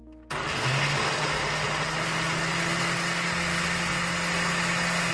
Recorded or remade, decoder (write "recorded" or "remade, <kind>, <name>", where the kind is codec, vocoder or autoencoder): recorded